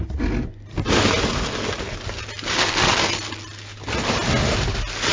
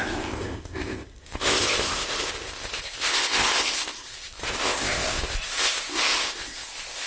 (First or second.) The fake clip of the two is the second